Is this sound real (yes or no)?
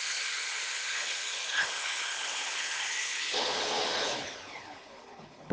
no